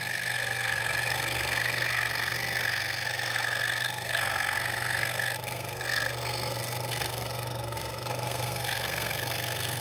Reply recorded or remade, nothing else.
remade